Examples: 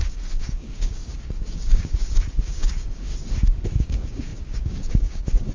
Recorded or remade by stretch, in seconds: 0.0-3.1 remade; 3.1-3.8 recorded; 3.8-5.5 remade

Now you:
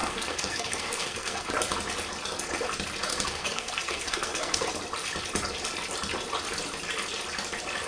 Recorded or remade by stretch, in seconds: 0.0-1.5 remade; 1.5-3.1 recorded; 3.1-4.7 remade; 4.7-7.9 recorded

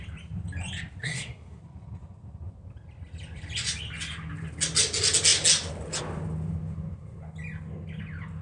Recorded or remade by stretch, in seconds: 0.0-1.0 recorded; 1.0-1.6 remade; 1.6-8.4 recorded

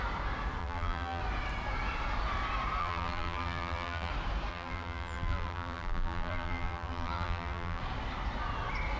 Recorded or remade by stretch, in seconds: 0.0-0.6 recorded; 0.6-1.2 remade; 1.2-2.8 recorded; 2.8-4.1 remade; 4.1-4.5 recorded; 4.5-7.8 remade; 7.8-9.0 recorded

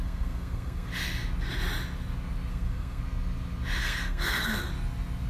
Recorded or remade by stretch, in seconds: 0.0-0.9 remade; 0.9-2.5 recorded; 2.5-3.0 remade; 3.0-3.8 recorded; 3.8-4.7 remade; 4.7-5.3 recorded